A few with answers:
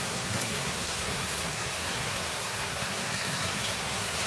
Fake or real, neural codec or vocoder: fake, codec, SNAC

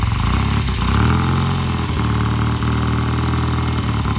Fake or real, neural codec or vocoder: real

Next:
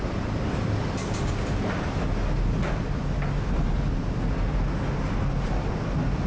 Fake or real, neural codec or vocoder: real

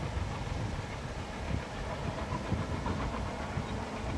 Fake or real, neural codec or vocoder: real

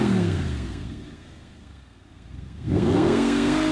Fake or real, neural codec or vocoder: fake, codec, SNAC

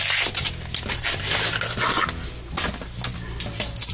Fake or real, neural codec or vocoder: real